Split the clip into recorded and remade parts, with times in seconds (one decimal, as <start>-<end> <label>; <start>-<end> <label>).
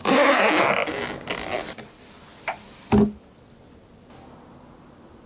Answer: 0.0-5.3 recorded